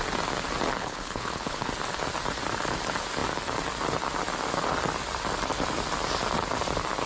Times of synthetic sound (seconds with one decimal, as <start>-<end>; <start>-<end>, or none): 0.8-1.7